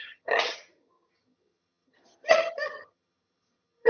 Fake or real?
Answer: fake